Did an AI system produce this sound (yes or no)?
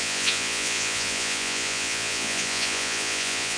yes